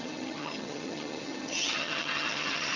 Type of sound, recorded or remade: remade